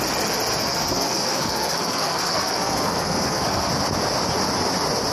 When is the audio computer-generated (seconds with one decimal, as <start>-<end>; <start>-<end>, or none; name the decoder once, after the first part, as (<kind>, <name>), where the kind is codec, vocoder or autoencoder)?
0.6-3.7 (codec, SNAC)